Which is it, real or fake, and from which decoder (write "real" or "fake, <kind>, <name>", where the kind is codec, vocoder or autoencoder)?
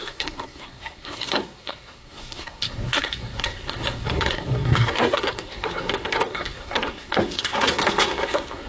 fake, codec, SNAC